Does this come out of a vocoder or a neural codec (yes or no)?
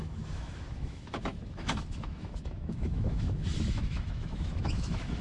yes